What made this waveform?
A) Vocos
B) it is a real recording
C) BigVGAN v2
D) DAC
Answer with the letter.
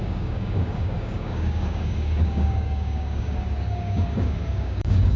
D